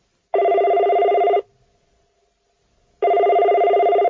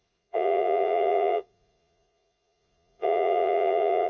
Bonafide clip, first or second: first